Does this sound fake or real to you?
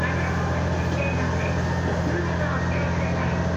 real